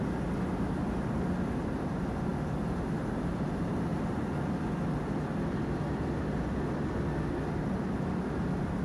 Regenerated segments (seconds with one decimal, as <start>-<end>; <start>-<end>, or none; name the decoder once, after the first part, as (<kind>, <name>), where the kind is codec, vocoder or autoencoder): none